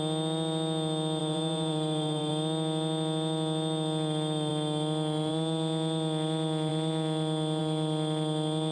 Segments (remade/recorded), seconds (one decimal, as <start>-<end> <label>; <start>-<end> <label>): 0.0-1.2 recorded; 1.2-2.3 remade; 2.3-8.7 recorded